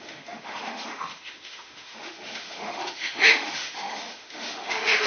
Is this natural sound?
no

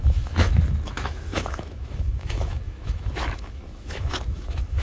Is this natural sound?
no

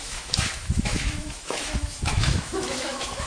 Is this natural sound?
no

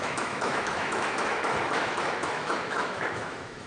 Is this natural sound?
no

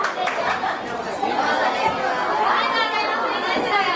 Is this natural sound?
yes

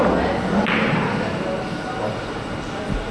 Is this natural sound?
yes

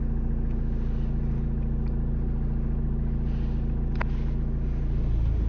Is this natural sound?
yes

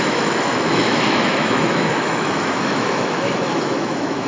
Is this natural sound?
no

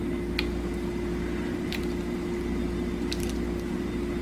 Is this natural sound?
yes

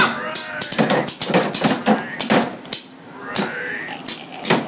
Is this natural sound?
yes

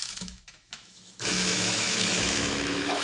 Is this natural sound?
no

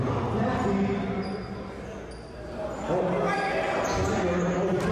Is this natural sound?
yes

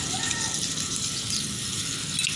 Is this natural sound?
yes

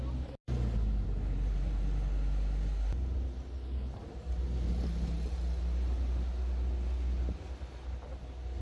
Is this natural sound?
yes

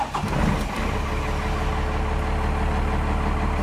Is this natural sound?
yes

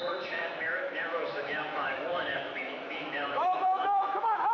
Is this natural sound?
no